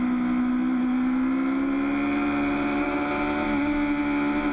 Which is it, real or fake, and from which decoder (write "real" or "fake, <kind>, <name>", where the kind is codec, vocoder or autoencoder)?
real